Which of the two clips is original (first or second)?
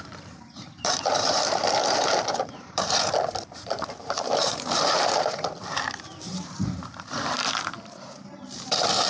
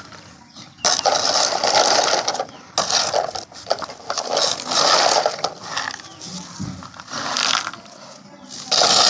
second